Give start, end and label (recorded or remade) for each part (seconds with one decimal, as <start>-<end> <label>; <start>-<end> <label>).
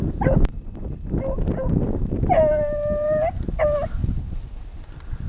0.0-0.5 remade; 0.5-3.6 recorded; 3.6-4.0 remade; 4.0-5.3 recorded